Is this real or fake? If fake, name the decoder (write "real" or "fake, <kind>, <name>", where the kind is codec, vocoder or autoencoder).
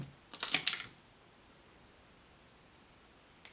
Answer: real